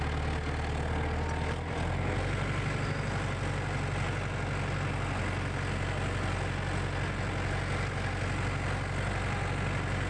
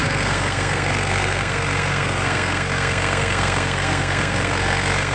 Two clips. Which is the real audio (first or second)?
first